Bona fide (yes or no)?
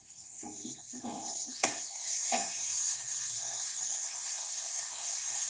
no